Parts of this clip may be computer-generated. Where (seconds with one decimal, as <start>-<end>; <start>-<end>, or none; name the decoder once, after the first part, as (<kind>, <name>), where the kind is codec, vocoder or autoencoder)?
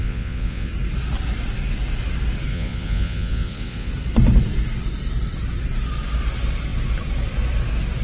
0.0-0.7 (vocoder, Vocos); 2.5-3.9